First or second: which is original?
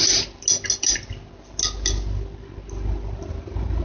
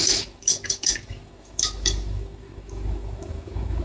first